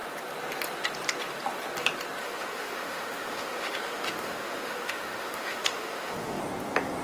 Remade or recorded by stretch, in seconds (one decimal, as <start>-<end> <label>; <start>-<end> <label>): 0.0-2.2 recorded; 2.2-6.4 remade; 6.4-7.0 recorded